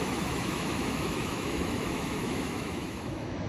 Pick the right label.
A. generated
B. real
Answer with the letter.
A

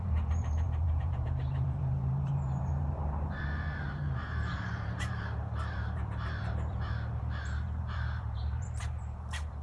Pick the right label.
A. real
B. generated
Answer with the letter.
B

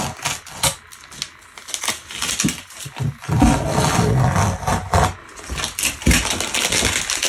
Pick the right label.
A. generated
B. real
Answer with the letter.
B